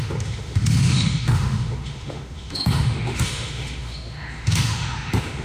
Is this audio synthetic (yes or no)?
yes